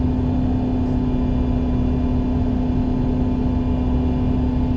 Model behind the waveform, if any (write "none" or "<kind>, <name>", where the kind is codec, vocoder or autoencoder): none